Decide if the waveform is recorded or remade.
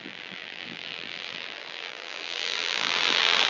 remade